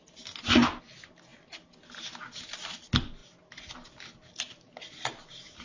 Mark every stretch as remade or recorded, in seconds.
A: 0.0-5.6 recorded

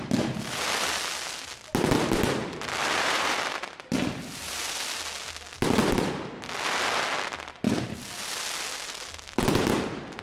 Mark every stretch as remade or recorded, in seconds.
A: 0.0-2.4 recorded; 2.4-4.0 remade; 4.0-10.2 recorded

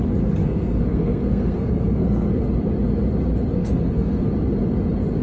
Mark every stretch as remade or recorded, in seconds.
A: 0.0-0.4 recorded; 0.4-2.3 remade; 2.3-3.6 recorded; 3.6-4.2 remade; 4.2-5.2 recorded

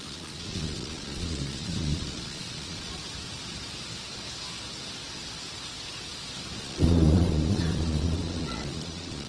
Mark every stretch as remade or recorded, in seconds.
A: 0.0-3.0 remade; 3.0-6.6 recorded; 6.6-9.3 remade

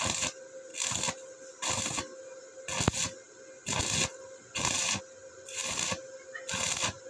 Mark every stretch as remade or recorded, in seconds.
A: 0.0-0.7 remade; 0.7-5.0 recorded; 5.0-5.6 remade; 5.6-6.5 recorded; 6.5-7.1 remade

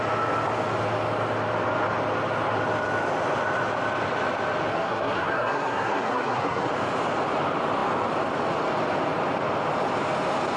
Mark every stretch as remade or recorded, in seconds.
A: 0.0-4.7 recorded; 4.7-6.7 remade; 6.7-10.6 recorded